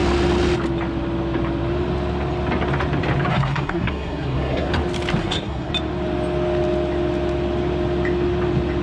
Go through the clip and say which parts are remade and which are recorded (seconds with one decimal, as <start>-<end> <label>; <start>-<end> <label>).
0.0-3.3 recorded; 3.3-4.7 remade; 4.7-5.2 recorded; 5.2-5.7 remade; 5.7-8.8 recorded